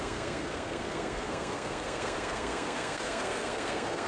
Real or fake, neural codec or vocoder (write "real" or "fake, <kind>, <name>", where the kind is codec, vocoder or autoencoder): fake, codec, SNAC